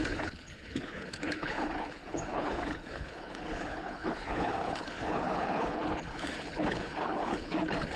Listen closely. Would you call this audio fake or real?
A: fake